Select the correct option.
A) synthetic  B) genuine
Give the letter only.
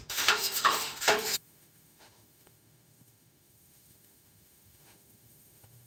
A